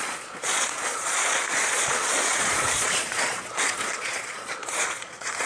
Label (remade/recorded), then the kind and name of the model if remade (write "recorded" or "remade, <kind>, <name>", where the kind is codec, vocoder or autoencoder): remade, vocoder, Vocos